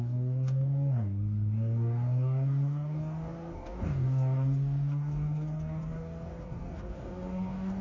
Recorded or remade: remade